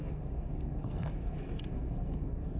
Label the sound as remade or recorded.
remade